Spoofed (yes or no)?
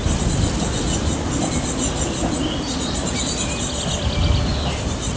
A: no